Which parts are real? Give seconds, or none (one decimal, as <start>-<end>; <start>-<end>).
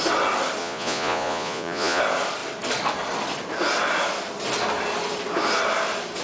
0.0-0.6; 2.0-6.2